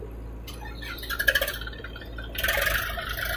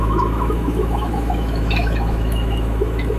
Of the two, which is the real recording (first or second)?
first